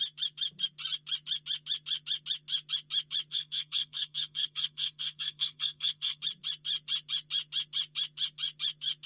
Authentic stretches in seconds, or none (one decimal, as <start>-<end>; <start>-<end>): 0.0-3.3; 6.2-9.1